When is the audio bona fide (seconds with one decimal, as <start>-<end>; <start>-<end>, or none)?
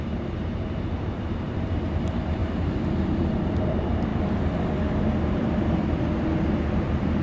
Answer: 4.1-6.3